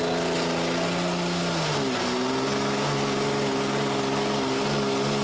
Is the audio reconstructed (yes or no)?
no